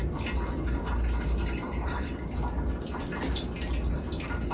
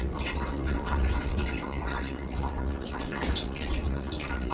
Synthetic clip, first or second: second